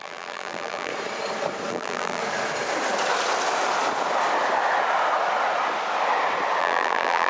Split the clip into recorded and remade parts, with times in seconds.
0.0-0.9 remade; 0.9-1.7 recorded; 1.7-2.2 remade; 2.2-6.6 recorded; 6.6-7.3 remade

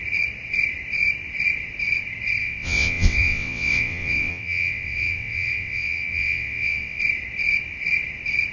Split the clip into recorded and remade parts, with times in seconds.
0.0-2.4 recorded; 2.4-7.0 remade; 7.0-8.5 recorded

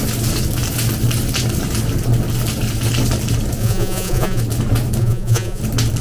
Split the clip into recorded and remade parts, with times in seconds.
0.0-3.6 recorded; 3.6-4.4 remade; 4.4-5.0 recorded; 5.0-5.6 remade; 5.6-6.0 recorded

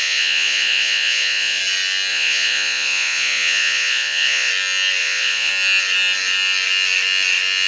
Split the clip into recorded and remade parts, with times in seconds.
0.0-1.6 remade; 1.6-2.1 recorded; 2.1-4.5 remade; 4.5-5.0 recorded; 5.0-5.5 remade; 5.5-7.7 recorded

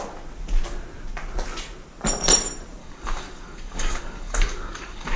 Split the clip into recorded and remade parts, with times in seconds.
0.0-2.8 recorded; 2.8-5.2 remade